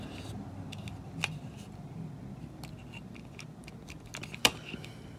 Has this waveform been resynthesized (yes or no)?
no